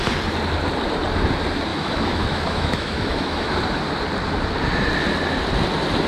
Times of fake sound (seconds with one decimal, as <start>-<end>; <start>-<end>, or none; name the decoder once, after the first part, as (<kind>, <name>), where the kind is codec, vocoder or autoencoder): 1.7-3.5 (autoencoder, DAC-VAE)